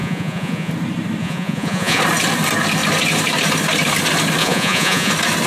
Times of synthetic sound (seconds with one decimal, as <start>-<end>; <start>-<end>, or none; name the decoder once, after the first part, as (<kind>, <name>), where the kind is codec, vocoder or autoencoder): 0.0-0.7 (vocoder, Vocos); 1.2-2.0; 4.4-5.1